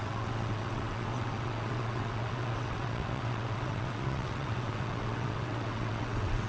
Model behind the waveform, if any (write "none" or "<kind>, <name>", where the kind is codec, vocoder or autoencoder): vocoder, WaveNeXt